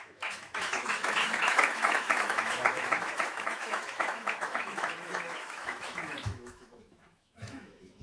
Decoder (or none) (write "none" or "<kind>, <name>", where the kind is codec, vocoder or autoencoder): autoencoder, DAC-VAE